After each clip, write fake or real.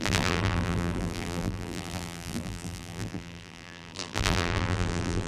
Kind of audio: fake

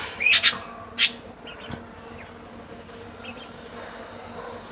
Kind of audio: real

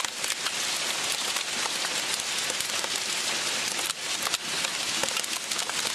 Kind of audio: real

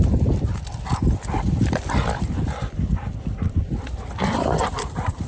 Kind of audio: fake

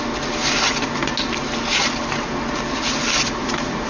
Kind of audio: real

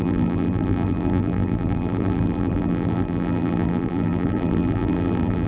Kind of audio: fake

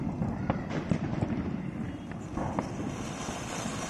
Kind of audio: real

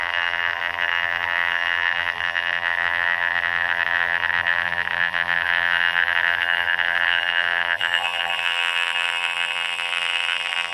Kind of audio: fake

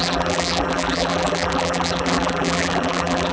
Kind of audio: fake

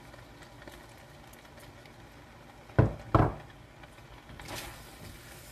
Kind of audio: real